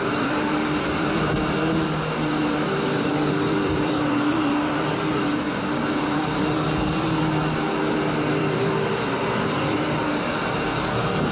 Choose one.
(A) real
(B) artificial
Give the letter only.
B